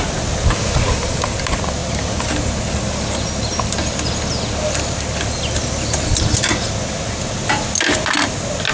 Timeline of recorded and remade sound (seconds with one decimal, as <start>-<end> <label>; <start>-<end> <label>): 0.0-8.7 recorded